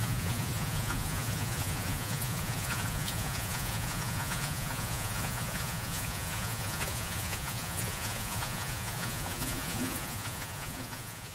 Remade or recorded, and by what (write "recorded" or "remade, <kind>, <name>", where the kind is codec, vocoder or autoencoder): remade, vocoder, Vocos